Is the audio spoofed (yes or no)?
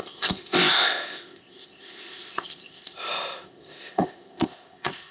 yes